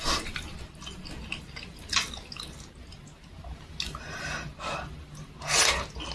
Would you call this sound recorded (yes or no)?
yes